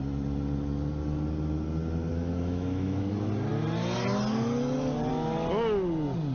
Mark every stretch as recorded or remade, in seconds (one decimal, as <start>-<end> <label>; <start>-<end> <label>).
0.0-2.1 recorded; 2.1-3.1 remade; 3.1-6.3 recorded